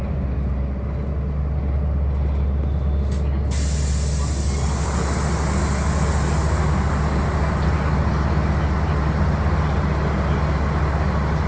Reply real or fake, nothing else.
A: real